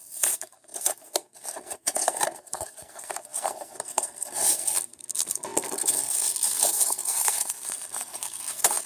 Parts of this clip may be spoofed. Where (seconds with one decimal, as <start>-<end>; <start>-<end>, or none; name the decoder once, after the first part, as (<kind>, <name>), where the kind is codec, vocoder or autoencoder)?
0.0-8.9 (codec, SNAC)